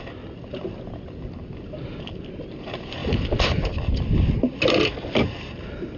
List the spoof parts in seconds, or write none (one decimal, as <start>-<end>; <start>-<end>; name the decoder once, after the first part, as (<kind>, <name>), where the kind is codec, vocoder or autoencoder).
none